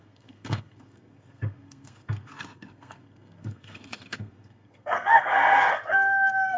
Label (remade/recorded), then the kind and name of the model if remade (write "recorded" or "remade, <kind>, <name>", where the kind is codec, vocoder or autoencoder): remade, codec, SNAC